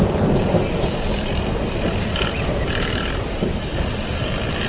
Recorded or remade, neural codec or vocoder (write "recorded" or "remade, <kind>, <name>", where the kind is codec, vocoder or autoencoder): recorded